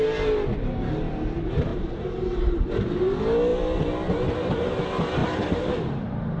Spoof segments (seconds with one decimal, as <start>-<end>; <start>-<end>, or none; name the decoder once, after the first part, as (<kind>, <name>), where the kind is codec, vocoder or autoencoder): 1.7-2.9 (vocoder, BigVGAN v2); 5.2-6.4